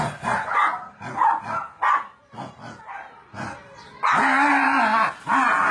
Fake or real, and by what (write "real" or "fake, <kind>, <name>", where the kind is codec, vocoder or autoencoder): real